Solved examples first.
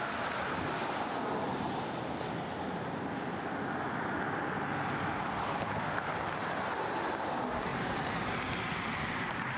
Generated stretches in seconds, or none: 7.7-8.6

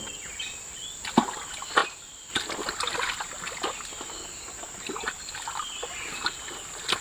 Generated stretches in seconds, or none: none

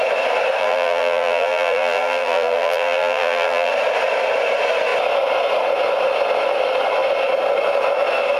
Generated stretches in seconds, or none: 0.6-3.7

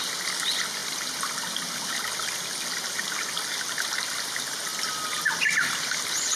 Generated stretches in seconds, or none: 4.7-6.4

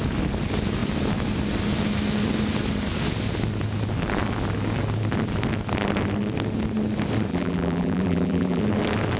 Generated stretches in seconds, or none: 7.3-8.6

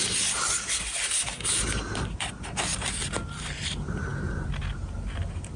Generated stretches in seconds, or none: 4.1-4.6

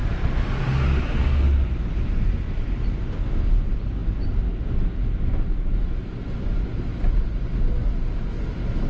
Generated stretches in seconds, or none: none

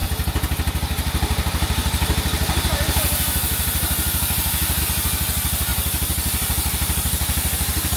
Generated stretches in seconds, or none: 0.0-4.8; 5.7-8.0